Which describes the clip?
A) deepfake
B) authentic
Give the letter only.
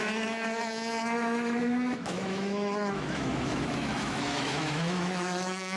A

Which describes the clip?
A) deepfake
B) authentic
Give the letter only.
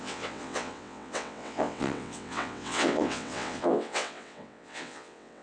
A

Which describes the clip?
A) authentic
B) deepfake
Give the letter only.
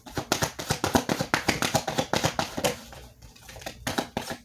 A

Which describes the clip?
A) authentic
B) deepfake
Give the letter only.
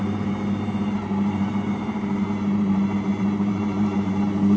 B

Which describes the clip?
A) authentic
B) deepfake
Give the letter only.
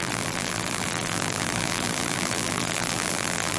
B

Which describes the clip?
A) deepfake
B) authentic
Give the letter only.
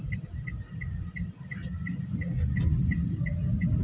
B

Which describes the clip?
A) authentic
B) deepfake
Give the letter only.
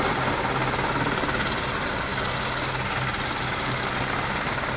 A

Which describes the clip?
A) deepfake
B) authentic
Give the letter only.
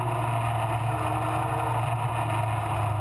B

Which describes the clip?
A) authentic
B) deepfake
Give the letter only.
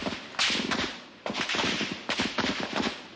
A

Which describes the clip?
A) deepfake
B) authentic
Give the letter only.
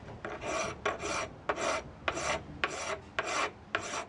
B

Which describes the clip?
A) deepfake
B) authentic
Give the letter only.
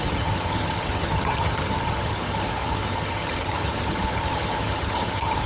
A